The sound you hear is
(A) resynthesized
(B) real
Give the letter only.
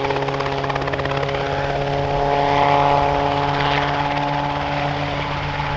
B